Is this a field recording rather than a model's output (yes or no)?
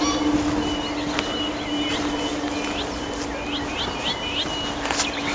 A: yes